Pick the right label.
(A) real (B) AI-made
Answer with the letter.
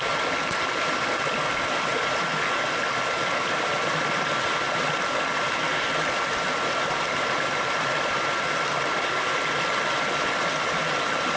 A